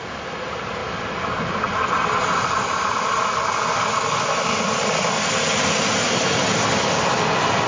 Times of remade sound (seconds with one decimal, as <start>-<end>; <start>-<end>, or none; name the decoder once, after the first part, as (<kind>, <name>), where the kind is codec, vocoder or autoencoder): none